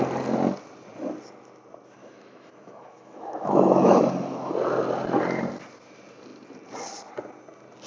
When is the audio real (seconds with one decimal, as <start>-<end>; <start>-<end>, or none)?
0.0-2.0; 4.5-7.9